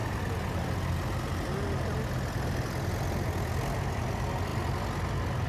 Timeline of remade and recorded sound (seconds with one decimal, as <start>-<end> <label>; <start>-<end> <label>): 0.0-5.5 recorded